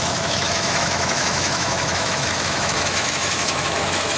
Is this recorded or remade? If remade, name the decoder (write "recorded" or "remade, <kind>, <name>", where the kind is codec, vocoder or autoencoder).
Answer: remade, autoencoder, DAC-VAE